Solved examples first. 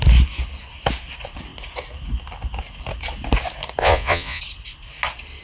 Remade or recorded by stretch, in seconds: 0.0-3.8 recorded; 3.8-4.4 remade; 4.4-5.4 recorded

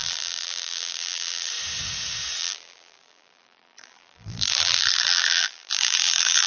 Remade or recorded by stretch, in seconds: 0.0-1.5 remade; 1.5-2.4 recorded; 2.4-6.5 remade

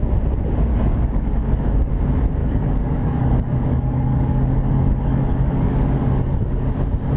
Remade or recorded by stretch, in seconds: 0.0-0.7 recorded; 0.7-1.9 remade; 1.9-2.4 recorded; 2.4-6.7 remade; 6.7-7.2 recorded

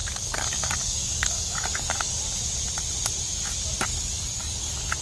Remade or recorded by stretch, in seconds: 0.0-2.2 remade; 2.2-3.9 recorded; 3.9-4.6 remade; 4.6-5.0 recorded

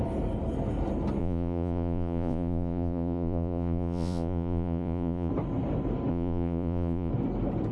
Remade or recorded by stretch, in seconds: 0.0-1.2 recorded; 1.2-5.3 remade; 5.3-6.1 recorded; 6.1-7.1 remade; 7.1-7.7 recorded